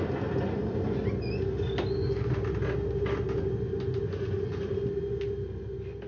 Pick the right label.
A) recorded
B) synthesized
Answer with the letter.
A